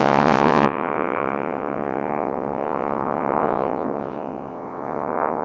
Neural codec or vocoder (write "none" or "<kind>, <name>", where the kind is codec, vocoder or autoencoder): vocoder, WaveNeXt